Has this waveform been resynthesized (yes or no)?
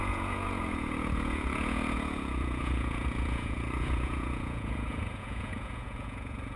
yes